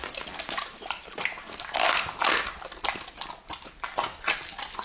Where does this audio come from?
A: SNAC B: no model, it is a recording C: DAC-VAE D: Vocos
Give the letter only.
B